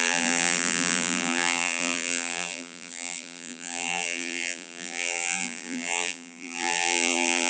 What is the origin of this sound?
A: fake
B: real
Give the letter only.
A